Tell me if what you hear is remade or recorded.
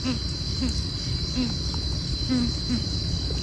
recorded